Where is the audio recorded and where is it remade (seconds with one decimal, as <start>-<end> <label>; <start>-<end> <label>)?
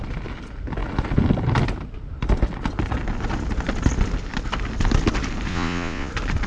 0.0-5.5 recorded; 5.5-6.1 remade; 6.1-6.5 recorded